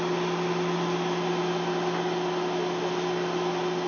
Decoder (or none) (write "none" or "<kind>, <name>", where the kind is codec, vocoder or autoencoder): none